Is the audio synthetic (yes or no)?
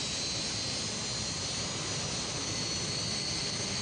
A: no